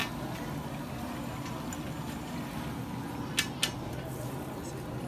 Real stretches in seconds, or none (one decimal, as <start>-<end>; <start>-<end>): 0.0-5.1

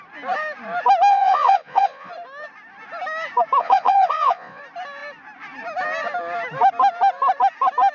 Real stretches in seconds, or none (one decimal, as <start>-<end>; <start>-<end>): 0.0-1.1; 2.1-3.6; 4.6-7.9

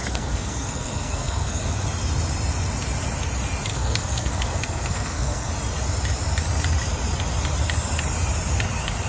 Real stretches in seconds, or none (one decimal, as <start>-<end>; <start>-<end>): 1.6-3.7; 5.5-9.1

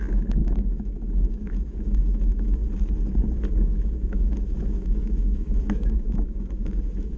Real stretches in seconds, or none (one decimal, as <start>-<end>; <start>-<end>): 2.6-3.6

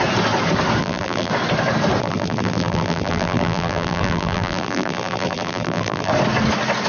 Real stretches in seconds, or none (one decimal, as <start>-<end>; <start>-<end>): 0.0-0.8; 1.3-2.0; 6.1-6.9